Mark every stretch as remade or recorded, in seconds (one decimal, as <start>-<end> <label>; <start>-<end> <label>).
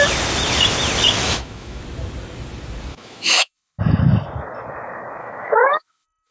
0.0-1.2 recorded; 1.2-1.8 remade; 1.8-2.9 recorded; 2.9-3.8 remade; 3.8-5.2 recorded; 5.2-6.3 remade